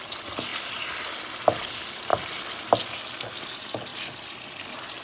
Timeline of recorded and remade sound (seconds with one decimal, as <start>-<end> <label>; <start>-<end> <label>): 0.0-0.5 recorded; 0.5-1.4 remade; 1.4-2.1 recorded; 2.1-2.6 remade; 2.6-3.9 recorded; 3.9-4.5 remade; 4.5-5.0 recorded